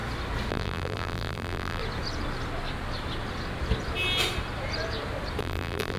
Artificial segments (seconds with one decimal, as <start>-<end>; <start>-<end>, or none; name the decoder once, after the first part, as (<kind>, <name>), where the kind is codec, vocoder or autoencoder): 0.5-1.8 (vocoder, BigVGAN v2); 5.4-6.0